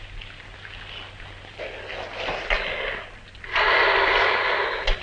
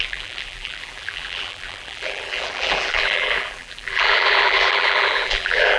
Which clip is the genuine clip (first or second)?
first